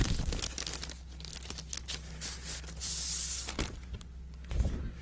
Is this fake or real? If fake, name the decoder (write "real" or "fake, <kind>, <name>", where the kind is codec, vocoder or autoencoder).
real